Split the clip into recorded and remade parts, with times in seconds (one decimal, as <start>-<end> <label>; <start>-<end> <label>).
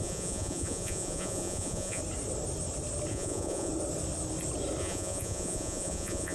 0.0-2.0 remade; 2.0-3.1 recorded; 3.1-3.7 remade; 3.7-4.8 recorded; 4.8-6.3 remade